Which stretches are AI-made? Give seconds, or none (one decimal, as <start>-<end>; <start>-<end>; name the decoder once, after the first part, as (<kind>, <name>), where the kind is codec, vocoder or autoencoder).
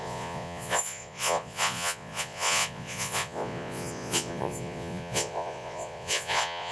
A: 0.0-6.7 (vocoder, Vocos)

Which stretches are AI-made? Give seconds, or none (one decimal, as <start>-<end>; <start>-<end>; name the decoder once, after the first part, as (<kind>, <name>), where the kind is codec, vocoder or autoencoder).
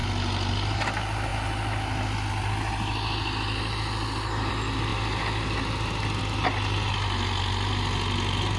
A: none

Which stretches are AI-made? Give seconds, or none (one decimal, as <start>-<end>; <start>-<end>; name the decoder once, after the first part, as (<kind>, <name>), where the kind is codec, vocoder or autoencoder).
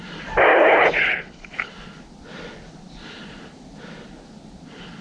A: 0.5-1.7 (codec, HILCodec)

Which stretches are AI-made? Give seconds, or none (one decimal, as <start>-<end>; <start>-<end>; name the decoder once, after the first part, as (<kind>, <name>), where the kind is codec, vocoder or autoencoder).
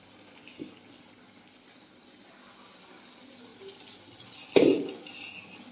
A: none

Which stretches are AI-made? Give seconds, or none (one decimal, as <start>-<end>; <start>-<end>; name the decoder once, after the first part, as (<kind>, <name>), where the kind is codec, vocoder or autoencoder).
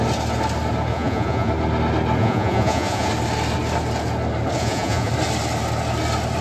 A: 0.9-1.5 (vocoder, Vocos); 2.2-3.1; 4.6-5.1